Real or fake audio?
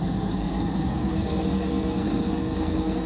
fake